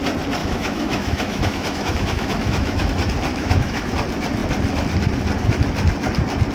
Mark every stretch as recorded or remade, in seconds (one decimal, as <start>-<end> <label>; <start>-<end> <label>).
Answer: 0.0-0.4 recorded; 0.4-2.9 remade; 2.9-3.3 recorded; 3.3-3.9 remade; 3.9-6.5 recorded